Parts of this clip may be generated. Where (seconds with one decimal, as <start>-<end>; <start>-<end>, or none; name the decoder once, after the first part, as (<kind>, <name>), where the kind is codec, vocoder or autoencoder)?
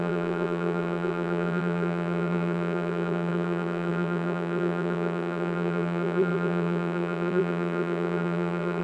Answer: 0.0-8.8 (vocoder, BigVGAN v2)